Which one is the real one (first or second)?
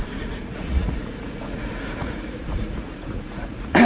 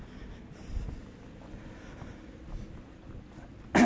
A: second